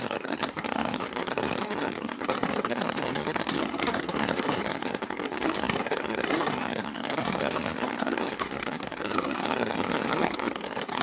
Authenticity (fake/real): fake